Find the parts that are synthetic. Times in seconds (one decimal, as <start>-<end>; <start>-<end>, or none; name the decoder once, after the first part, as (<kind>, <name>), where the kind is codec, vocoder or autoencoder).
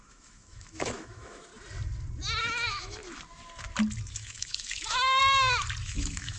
0.0-1.5 (autoencoder, DAC-VAE); 2.4-3.0; 4.1-5.2; 5.8-6.4